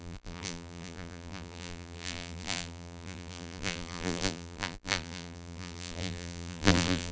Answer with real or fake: fake